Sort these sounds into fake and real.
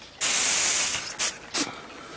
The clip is real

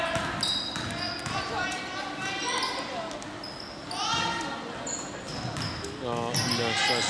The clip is real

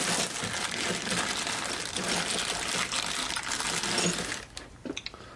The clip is real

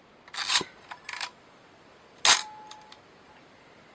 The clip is real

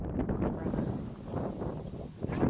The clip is real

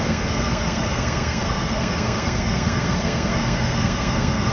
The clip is fake